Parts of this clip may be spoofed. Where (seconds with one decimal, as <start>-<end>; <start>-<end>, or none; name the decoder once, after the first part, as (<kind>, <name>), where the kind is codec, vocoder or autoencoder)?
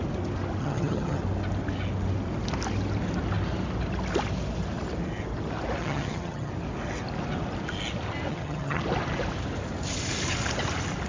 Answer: 0.6-1.2 (vocoder, HiFi-GAN); 5.8-6.5; 8.3-8.8